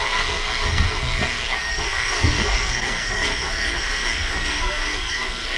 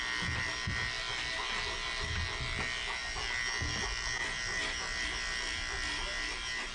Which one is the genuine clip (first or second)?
second